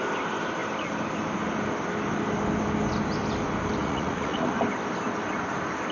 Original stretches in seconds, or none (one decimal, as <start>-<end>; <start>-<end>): 0.0-3.8; 4.5-5.9